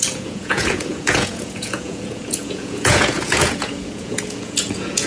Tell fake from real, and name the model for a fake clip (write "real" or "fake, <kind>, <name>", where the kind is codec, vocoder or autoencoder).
fake, vocoder, Vocos